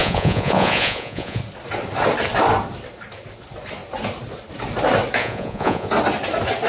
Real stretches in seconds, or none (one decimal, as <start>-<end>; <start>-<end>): 1.4-5.2; 5.9-6.7